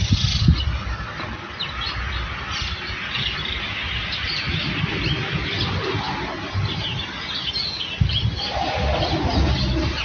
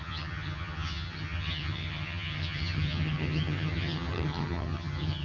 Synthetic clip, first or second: second